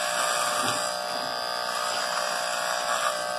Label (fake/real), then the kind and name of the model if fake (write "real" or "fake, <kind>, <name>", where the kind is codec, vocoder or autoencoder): real